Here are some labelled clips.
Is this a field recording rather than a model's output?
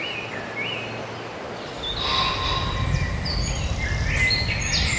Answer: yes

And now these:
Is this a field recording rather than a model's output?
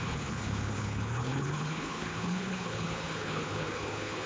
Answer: no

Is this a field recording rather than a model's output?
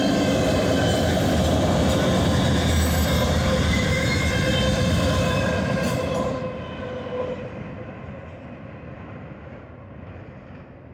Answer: yes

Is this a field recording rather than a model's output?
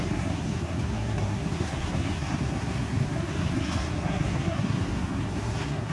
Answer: no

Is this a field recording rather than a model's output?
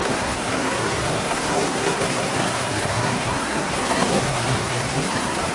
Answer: no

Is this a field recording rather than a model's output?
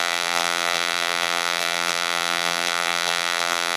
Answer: no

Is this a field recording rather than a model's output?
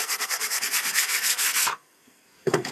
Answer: no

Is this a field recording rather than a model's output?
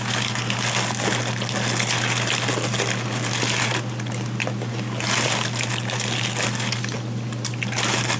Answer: no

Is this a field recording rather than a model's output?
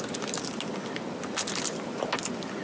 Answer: yes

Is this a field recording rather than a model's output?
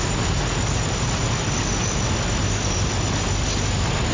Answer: yes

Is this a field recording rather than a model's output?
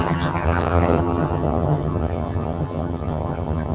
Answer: no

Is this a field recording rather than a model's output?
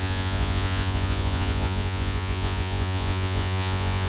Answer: no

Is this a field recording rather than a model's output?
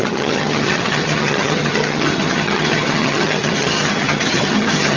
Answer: no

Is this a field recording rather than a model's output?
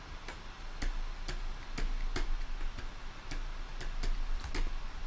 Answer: yes